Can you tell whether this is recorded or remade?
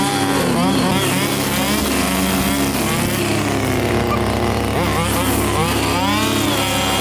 recorded